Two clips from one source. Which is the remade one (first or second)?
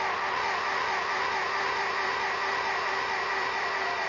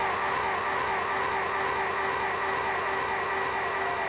first